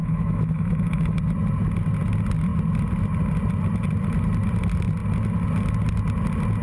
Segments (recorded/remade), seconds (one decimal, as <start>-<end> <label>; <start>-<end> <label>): 0.0-1.2 remade; 1.2-6.6 recorded